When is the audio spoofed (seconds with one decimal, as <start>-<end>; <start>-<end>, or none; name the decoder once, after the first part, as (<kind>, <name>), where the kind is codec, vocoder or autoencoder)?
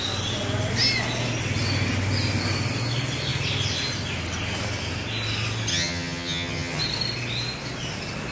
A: 5.7-6.8 (vocoder, HiFi-GAN)